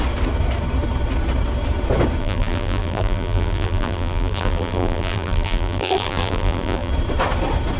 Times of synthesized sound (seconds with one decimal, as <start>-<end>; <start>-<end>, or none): 2.2-6.9